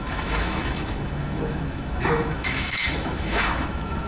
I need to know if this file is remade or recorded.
remade